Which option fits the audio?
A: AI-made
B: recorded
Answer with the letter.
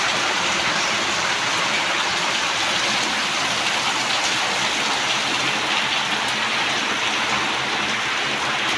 A